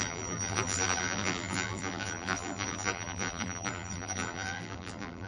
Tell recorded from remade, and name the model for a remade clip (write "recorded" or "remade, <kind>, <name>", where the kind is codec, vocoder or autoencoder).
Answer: remade, vocoder, BigVGAN v2